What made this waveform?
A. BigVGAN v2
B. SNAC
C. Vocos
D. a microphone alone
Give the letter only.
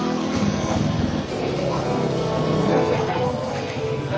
B